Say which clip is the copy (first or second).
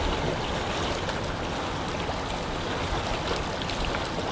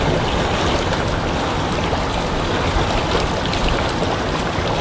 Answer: second